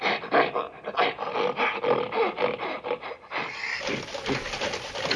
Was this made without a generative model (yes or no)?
yes